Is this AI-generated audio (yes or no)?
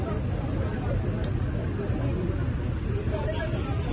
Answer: no